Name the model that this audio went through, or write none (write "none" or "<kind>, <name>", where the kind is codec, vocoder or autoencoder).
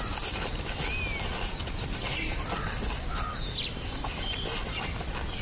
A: none